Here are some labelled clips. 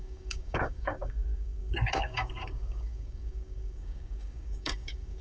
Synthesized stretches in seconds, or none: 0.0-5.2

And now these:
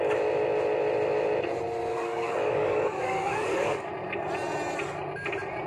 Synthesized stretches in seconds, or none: 1.9-3.9